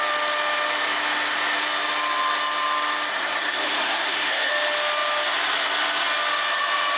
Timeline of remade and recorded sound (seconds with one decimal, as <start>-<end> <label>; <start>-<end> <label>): 0.0-3.1 recorded; 3.1-4.5 remade; 4.5-7.0 recorded